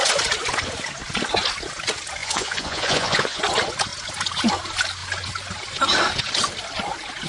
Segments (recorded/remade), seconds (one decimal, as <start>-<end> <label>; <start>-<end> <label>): 0.0-2.2 recorded; 2.2-3.4 remade; 3.4-7.3 recorded